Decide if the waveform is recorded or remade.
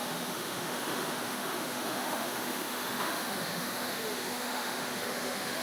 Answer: remade